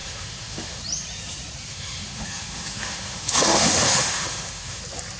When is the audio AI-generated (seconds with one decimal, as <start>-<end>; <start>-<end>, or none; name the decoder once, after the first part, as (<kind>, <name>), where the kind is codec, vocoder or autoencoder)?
0.0-0.8 (autoencoder, DAC-VAE); 1.7-4.8